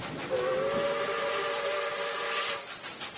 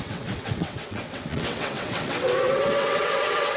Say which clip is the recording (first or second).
first